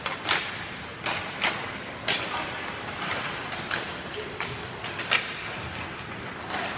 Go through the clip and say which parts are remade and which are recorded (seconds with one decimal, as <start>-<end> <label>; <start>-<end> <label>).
0.0-6.8 recorded